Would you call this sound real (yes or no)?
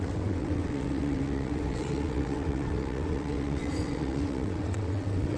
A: no